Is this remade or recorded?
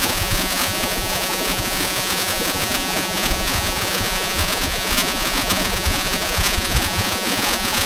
remade